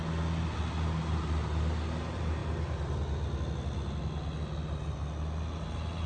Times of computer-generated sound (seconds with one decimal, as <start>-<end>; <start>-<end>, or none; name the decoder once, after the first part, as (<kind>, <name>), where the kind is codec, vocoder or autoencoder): none